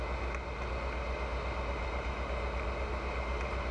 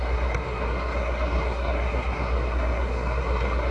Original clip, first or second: first